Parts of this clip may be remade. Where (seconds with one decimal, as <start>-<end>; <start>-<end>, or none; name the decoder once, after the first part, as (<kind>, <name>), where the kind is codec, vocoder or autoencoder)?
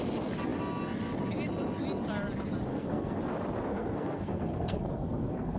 2.7-3.2 (codec, SNAC); 3.7-5.6